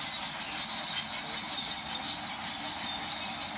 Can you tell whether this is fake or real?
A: real